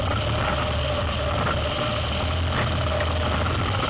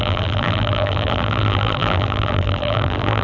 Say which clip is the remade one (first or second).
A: second